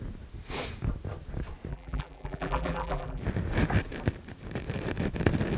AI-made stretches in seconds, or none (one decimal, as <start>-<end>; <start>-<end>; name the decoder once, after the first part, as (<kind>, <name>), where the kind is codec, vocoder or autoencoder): 1.7-3.2 (vocoder, BigVGAN v2)